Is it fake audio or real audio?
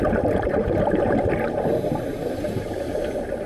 fake